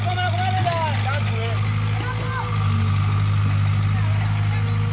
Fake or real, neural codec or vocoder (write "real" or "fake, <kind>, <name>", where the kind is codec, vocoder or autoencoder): real